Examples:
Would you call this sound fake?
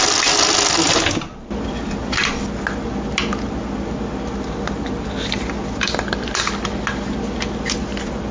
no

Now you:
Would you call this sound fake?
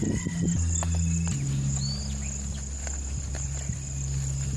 no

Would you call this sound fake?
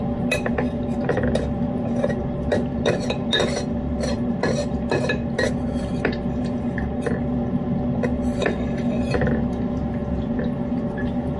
no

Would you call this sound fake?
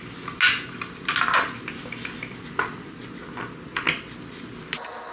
no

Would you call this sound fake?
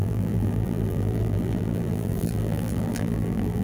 yes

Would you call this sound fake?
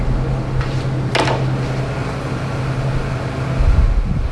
no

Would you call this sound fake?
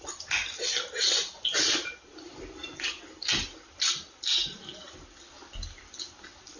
no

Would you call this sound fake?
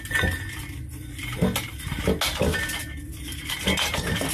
no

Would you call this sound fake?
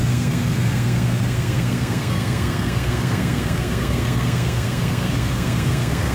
yes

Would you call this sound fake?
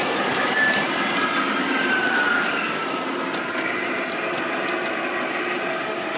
no